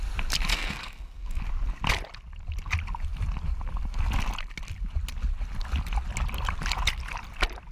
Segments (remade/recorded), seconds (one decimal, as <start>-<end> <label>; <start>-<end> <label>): 0.0-0.5 recorded; 0.5-1.4 remade; 1.4-7.7 recorded